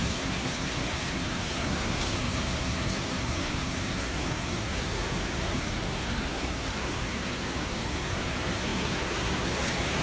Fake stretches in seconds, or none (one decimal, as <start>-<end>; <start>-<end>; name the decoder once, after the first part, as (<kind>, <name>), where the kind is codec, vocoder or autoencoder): 0.0-10.0 (codec, SNAC)

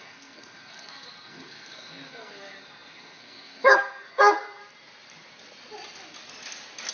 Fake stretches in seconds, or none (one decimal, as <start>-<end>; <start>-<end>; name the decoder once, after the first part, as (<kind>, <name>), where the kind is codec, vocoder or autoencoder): 0.0-4.6 (codec, SNAC)